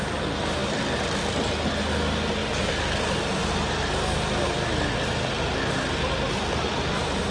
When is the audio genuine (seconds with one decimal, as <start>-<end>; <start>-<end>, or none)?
0.0-7.3